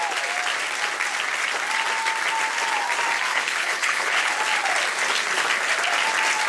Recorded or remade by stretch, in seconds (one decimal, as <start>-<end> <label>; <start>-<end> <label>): 0.0-3.3 recorded; 3.3-4.3 remade; 4.3-6.5 recorded